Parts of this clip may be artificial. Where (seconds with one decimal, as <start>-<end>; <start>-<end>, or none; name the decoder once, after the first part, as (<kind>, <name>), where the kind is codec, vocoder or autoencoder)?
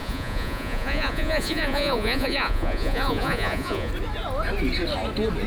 0.0-3.9 (vocoder, Vocos)